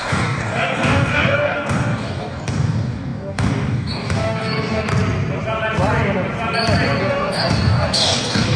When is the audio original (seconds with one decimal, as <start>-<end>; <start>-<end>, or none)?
4.9-7.0